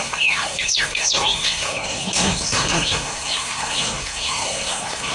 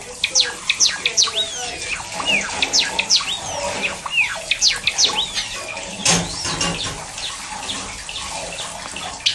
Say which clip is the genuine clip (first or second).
second